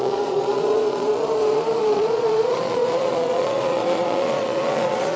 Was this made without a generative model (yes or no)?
no